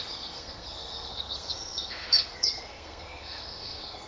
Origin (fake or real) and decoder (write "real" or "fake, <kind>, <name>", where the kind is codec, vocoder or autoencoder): fake, codec, SNAC